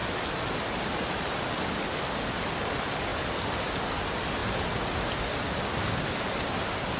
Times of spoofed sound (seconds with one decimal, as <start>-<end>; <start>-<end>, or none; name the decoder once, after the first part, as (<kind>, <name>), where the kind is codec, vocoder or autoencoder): none